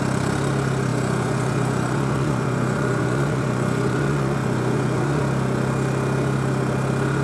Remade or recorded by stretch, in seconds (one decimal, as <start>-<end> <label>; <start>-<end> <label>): 0.0-0.9 recorded; 0.9-5.2 remade; 5.2-7.2 recorded